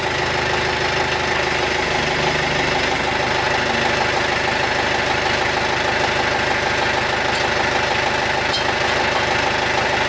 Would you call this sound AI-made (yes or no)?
no